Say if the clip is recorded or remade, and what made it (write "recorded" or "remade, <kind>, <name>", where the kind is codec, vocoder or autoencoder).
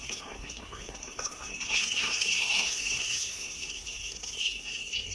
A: remade, codec, SNAC